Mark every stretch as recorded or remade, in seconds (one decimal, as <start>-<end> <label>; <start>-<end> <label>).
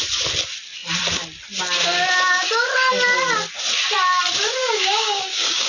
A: 0.0-4.6 recorded; 4.6-5.7 remade